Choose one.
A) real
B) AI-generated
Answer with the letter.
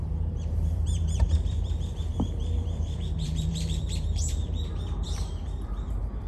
B